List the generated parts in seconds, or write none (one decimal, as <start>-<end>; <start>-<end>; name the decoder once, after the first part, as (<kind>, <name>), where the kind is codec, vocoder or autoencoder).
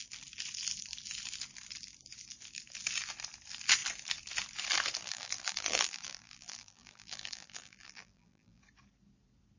5.0-8.6 (vocoder, BigVGAN v2)